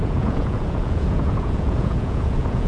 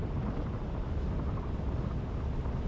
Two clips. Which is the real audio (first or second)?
second